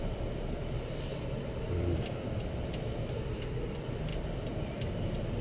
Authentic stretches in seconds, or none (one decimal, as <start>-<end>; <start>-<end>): 1.1-3.6